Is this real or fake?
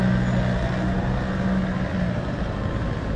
real